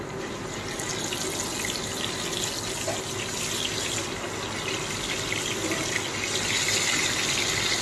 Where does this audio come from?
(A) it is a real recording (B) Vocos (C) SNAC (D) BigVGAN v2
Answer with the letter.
A